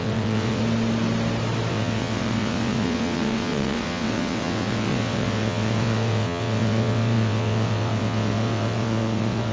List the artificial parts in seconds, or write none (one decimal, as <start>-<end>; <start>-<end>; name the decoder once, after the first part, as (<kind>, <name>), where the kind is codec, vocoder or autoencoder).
0.0-0.6 (vocoder, WaveNeXt); 1.7-9.5